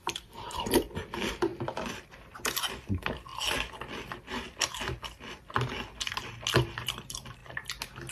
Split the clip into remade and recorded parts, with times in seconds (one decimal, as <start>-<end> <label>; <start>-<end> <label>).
0.0-3.3 remade; 3.3-6.8 recorded; 6.8-7.4 remade; 7.4-8.1 recorded